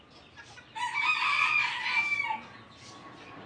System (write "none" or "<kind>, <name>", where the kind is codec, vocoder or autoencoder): none